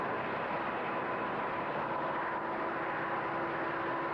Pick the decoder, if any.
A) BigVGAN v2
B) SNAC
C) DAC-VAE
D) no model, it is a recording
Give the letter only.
D